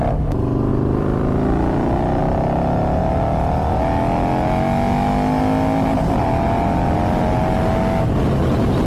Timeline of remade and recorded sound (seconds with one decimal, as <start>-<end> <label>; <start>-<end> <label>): 0.0-0.7 recorded; 0.7-2.2 remade; 2.2-8.9 recorded